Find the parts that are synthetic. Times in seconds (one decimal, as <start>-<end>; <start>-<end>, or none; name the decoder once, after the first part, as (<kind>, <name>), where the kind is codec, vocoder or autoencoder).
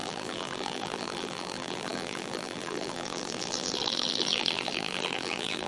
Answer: 0.0-5.7 (vocoder, BigVGAN v2)